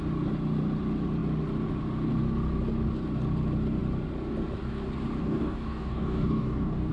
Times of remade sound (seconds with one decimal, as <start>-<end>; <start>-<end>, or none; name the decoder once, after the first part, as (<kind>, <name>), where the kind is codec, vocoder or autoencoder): 5.2-6.9 (codec, DAC)